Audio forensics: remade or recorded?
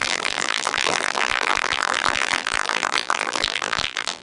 remade